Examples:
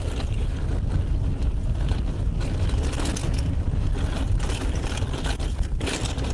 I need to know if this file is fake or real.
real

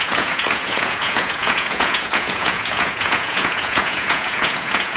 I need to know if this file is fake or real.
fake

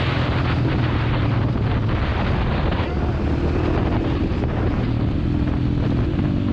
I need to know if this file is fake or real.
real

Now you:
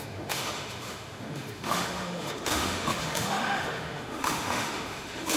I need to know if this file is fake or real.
fake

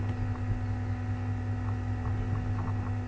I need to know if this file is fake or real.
real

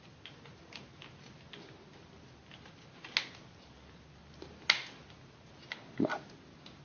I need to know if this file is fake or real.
real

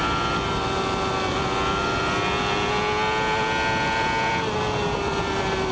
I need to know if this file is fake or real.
real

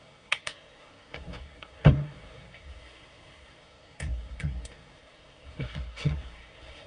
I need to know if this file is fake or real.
fake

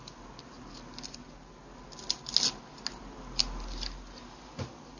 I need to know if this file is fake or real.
real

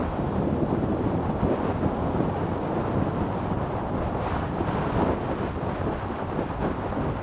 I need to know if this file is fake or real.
real